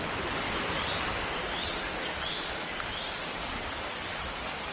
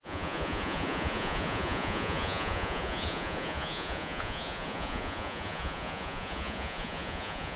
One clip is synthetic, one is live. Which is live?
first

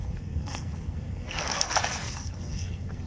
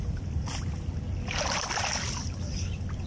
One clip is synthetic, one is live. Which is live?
second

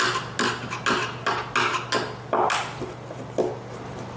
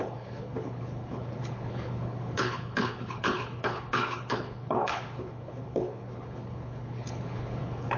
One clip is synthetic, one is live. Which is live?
first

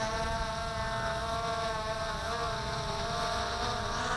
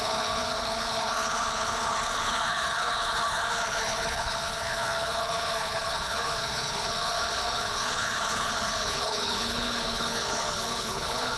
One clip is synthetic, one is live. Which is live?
first